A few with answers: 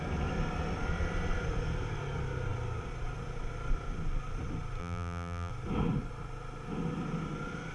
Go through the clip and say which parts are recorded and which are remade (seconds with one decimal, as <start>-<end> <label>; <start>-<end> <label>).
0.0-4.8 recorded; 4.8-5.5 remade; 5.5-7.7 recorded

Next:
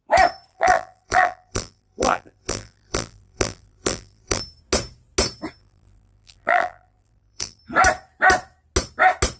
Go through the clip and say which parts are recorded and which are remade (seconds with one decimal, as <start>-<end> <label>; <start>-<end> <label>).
0.0-0.5 recorded; 0.5-4.4 remade; 4.4-5.6 recorded; 5.6-7.6 remade; 7.6-9.4 recorded

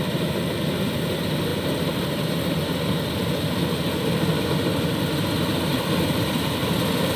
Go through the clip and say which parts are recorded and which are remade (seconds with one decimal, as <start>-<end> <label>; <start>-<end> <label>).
0.0-1.5 recorded; 1.5-2.3 remade; 2.3-5.7 recorded; 5.7-6.7 remade; 6.7-7.2 recorded

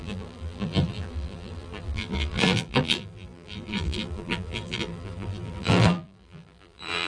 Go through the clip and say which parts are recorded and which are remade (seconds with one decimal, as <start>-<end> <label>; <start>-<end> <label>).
0.0-7.1 remade